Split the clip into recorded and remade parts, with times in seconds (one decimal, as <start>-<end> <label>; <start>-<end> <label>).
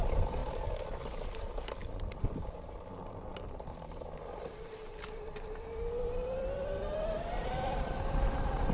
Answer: 0.0-0.4 remade; 0.4-2.2 recorded; 2.2-8.7 remade